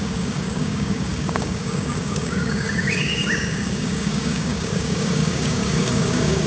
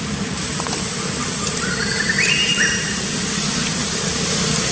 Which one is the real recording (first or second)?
second